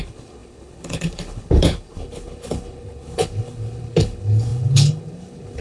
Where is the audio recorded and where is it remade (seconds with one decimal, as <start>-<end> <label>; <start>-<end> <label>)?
0.0-5.6 remade